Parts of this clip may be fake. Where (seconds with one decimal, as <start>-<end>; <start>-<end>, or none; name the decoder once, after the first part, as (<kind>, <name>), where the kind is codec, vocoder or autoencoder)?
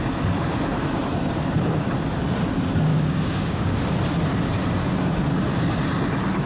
2.9-3.8 (codec, DAC)